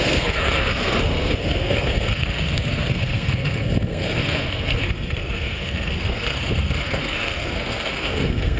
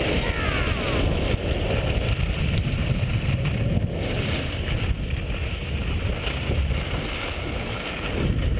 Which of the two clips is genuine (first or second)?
second